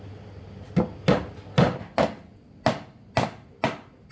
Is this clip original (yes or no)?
yes